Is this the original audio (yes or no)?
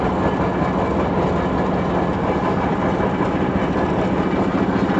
yes